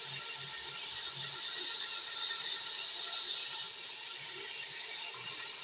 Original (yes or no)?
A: yes